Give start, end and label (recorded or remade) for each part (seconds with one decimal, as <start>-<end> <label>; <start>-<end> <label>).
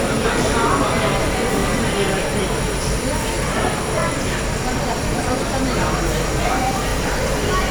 0.0-1.6 recorded; 1.6-2.4 remade; 2.4-4.0 recorded; 4.0-5.2 remade; 5.2-6.9 recorded; 6.9-7.7 remade